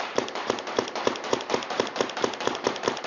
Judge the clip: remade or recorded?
remade